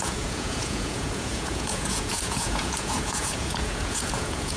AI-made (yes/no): yes